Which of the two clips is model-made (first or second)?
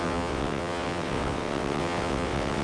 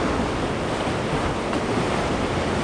first